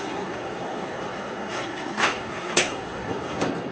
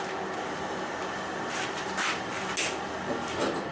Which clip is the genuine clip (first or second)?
second